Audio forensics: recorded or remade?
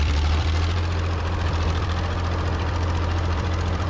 remade